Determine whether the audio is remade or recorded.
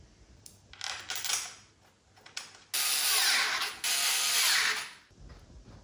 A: recorded